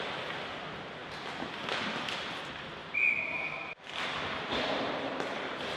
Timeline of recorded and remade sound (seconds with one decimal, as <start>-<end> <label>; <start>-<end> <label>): 0.0-2.8 recorded; 2.8-5.1 remade; 5.1-5.8 recorded